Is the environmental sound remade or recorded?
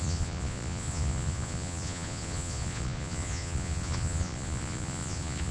remade